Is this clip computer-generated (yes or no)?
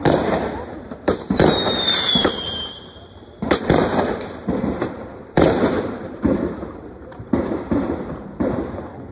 yes